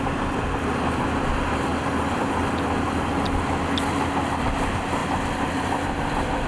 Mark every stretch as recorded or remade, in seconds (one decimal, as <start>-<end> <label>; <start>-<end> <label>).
0.0-5.0 recorded; 5.0-6.5 remade